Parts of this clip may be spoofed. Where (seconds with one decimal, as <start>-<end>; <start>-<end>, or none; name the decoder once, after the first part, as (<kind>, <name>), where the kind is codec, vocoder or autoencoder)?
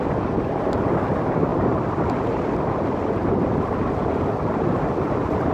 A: 4.0-5.5 (vocoder, BigVGAN v2)